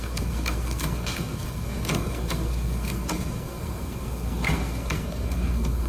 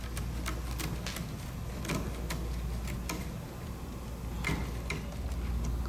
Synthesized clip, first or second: first